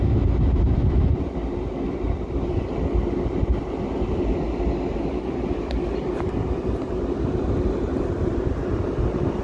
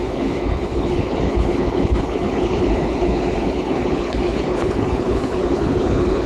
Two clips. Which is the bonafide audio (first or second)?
first